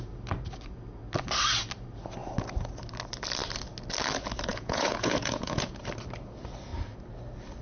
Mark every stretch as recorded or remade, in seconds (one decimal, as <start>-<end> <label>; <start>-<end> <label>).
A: 0.0-4.5 recorded; 4.5-5.8 remade; 5.8-7.6 recorded